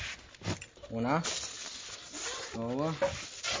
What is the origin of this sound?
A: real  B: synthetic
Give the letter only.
A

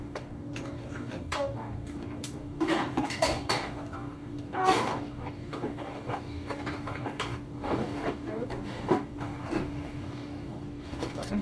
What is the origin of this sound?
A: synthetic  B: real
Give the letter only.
A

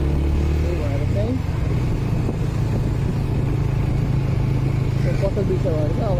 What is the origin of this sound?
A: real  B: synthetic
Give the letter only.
A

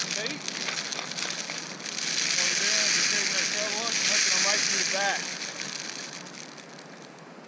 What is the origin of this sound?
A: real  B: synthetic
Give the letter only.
A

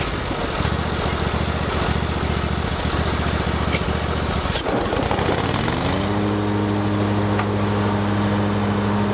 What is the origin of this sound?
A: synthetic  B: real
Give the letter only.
B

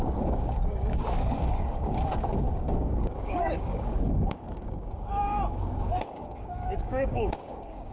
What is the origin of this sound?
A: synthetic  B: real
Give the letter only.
A